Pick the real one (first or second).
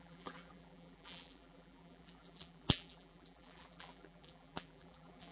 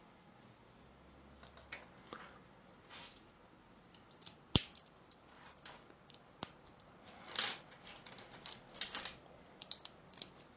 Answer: second